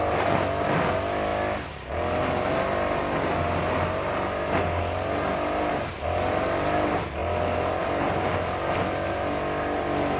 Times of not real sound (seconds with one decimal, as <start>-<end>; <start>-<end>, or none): none